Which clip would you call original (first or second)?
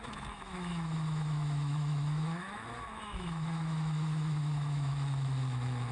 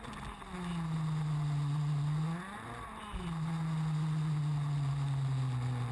second